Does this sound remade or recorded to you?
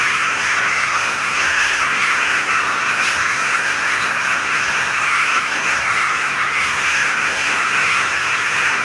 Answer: remade